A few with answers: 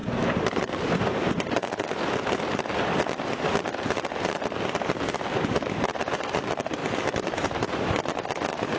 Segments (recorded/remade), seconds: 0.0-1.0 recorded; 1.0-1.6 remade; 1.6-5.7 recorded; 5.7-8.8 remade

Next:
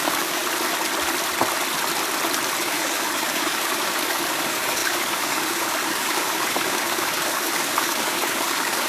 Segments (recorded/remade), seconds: 0.0-0.4 remade; 0.4-2.6 recorded; 2.6-8.9 remade

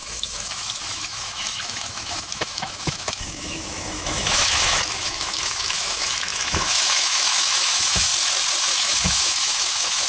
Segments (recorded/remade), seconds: 0.0-8.1 remade; 8.1-8.6 recorded; 8.6-10.1 remade

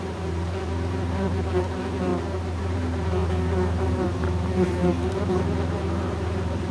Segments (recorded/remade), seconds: 0.0-3.2 remade; 3.2-3.8 recorded; 3.8-6.7 remade

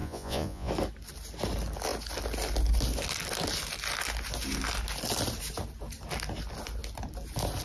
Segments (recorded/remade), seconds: 0.0-0.7 remade; 0.7-7.6 recorded